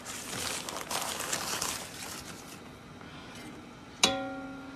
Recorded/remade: recorded